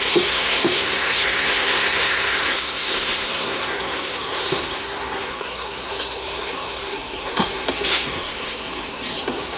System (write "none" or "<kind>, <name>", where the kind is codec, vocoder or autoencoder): codec, SNAC